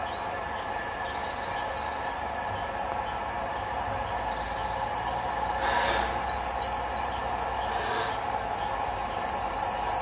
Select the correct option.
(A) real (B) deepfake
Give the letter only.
A